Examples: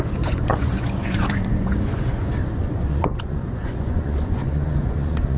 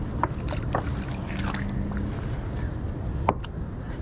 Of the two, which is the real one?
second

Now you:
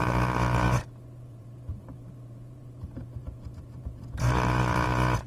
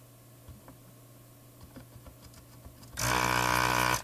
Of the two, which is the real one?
second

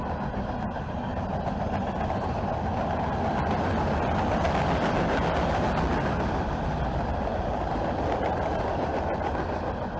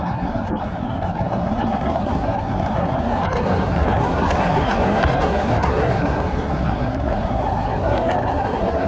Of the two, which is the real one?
first